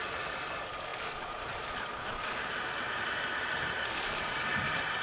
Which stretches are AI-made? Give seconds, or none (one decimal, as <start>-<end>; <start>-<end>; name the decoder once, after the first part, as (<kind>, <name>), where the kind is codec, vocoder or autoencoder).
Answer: 0.0-5.0 (vocoder, BigVGAN v2)